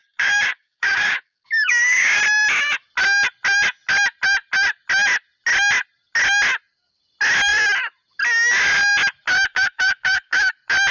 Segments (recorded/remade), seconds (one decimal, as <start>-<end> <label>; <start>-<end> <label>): 0.0-2.2 remade; 2.2-9.5 recorded; 9.5-10.5 remade; 10.5-10.9 recorded